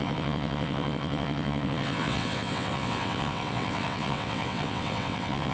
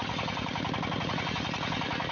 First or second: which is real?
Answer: second